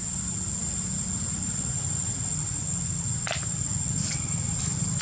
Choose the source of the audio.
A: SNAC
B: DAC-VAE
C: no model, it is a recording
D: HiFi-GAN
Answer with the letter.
C